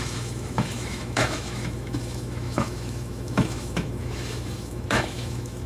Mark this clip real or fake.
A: fake